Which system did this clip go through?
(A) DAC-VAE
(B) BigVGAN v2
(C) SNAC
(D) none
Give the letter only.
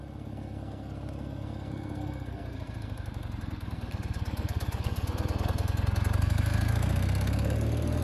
C